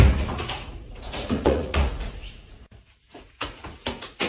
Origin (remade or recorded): remade